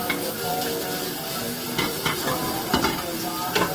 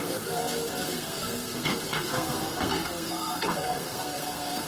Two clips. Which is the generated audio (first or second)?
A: second